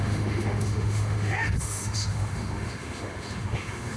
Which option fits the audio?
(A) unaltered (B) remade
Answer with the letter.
B